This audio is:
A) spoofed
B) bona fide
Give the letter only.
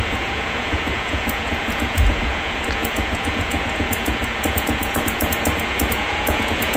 A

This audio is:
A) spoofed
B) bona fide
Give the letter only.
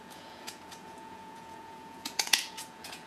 A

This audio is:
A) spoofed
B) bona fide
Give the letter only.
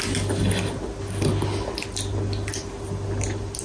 B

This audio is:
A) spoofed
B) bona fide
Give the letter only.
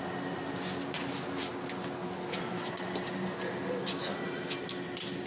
B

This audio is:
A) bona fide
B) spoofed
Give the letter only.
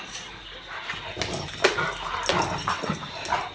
A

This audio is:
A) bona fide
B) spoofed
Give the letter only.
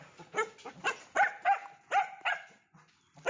A